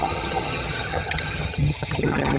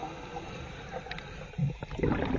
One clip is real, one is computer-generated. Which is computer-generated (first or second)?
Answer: first